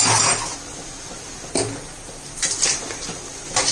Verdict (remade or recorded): recorded